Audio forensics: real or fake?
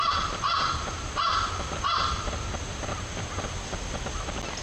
real